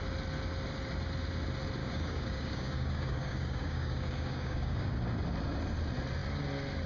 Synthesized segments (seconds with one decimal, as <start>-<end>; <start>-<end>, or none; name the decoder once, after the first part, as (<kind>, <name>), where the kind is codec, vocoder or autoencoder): 1.8-4.9 (codec, DAC)